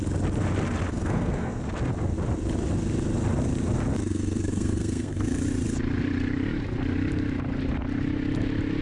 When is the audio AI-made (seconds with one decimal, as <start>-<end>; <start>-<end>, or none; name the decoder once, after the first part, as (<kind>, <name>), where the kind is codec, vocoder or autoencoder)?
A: 0.9-1.6 (codec, SNAC); 4.0-5.4

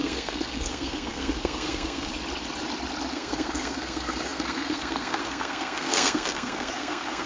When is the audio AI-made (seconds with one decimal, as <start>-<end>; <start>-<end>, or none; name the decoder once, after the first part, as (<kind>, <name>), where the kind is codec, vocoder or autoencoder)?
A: 0.0-2.1 (codec, SNAC); 3.1-7.3

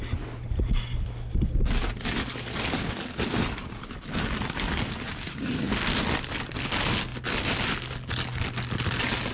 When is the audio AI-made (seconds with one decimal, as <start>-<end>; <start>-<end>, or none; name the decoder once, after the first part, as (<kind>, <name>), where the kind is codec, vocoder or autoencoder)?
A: none

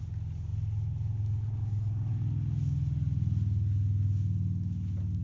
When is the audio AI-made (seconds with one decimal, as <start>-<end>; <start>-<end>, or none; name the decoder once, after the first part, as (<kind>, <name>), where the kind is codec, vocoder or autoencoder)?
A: none

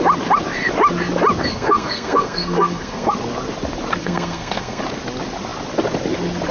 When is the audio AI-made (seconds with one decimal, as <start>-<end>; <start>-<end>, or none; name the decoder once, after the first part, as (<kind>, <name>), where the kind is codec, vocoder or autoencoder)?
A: 1.5-3.1 (codec, SNAC); 4.0-4.8

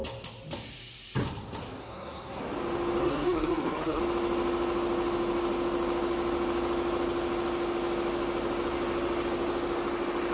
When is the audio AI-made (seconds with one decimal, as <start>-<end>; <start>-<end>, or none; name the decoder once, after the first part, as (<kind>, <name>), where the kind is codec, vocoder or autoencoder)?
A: 1.8-2.4 (codec, SNAC); 3.0-4.0

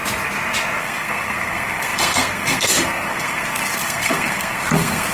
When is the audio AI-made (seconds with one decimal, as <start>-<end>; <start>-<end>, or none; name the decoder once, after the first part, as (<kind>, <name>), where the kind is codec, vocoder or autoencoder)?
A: 0.8-5.1 (codec, SNAC)